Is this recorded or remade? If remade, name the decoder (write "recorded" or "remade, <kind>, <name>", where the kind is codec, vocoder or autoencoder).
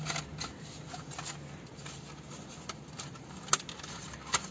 recorded